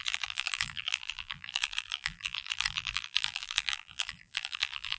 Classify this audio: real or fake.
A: fake